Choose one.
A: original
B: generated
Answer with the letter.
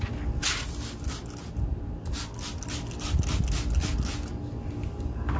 A